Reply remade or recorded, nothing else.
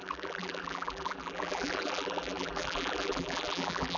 remade